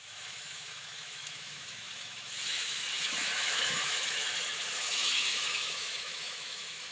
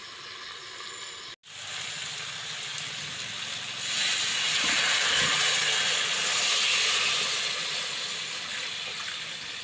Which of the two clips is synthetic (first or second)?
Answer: first